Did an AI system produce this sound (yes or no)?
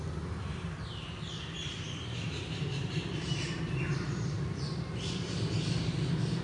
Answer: yes